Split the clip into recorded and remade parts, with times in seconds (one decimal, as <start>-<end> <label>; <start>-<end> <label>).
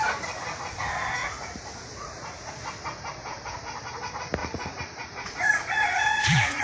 0.0-1.2 recorded; 1.2-2.5 remade; 2.5-3.2 recorded; 3.2-3.9 remade; 3.9-4.4 recorded; 4.4-6.6 remade